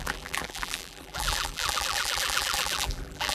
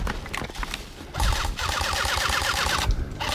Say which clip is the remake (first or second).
first